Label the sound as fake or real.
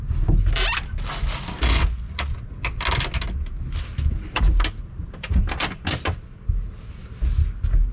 real